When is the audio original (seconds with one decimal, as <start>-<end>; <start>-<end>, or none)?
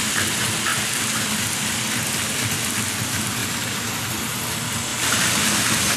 0.0-0.7; 1.3-4.9